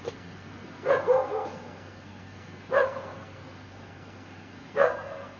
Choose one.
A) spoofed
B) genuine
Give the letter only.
A